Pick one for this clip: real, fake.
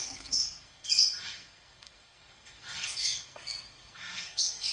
fake